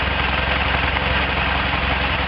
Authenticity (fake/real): real